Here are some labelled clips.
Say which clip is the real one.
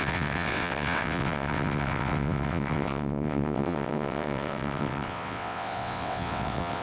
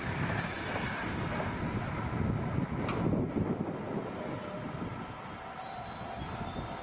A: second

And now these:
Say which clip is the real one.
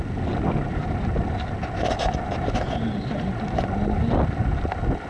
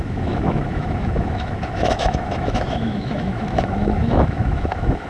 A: first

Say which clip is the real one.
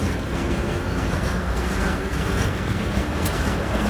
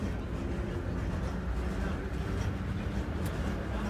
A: second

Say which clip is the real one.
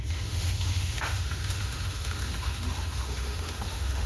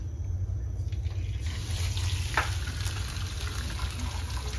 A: second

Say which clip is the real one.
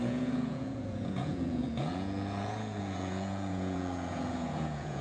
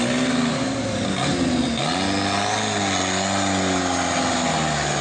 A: second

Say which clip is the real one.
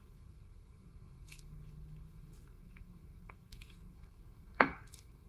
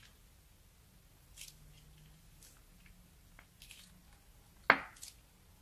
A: second